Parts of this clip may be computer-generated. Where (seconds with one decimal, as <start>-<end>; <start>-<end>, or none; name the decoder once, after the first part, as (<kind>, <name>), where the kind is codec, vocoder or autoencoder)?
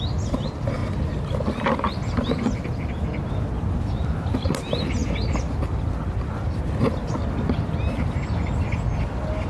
none